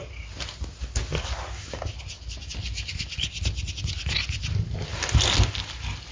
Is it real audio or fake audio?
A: real